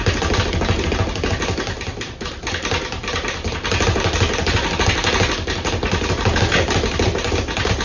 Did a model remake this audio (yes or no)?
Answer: no